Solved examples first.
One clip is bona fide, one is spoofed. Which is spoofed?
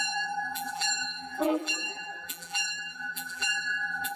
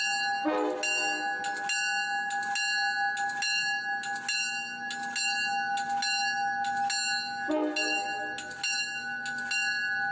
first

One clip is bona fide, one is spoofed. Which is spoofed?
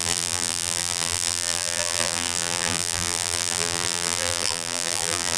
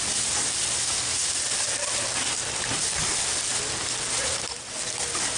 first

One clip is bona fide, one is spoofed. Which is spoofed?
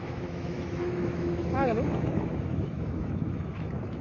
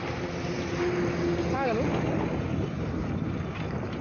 first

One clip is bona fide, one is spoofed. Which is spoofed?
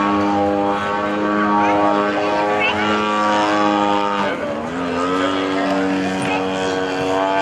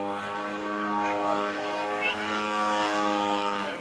second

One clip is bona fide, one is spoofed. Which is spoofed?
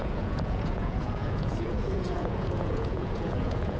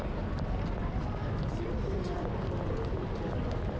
first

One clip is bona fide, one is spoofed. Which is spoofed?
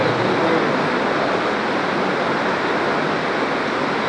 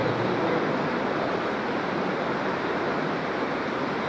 second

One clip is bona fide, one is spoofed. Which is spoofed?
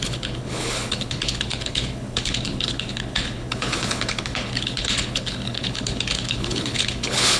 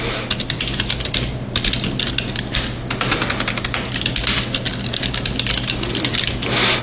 first